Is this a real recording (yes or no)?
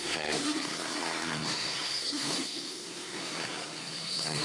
no